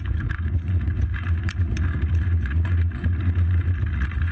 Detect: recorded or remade remade